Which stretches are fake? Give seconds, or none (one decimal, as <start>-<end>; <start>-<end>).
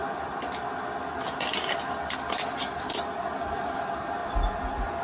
none